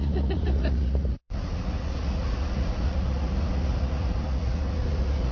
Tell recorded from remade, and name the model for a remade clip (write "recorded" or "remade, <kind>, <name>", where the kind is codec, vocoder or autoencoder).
remade, vocoder, Vocos